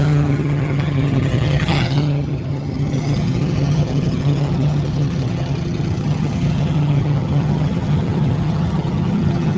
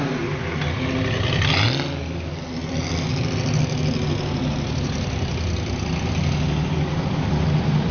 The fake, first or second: first